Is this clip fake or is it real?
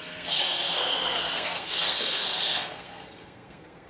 fake